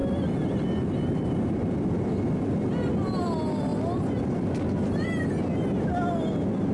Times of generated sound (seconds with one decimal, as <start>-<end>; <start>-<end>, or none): 0.0-3.3; 3.7-5.3